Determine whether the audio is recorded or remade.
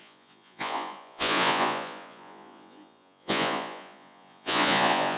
remade